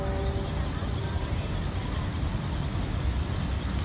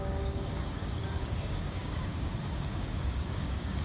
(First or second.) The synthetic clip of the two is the second